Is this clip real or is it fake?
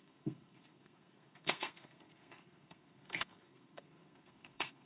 fake